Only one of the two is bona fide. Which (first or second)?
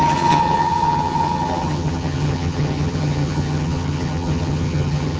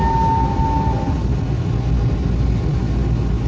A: second